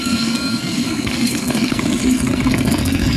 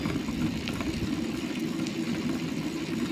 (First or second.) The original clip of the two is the second